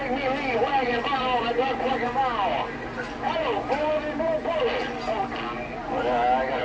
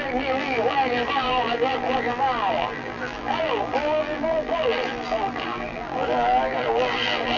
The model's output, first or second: second